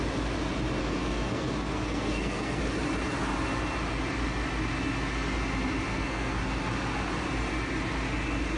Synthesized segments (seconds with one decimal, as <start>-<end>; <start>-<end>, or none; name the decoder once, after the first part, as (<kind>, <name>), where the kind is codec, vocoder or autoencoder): 0.8-2.6 (codec, SNAC); 5.9-6.4